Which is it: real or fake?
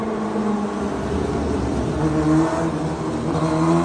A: real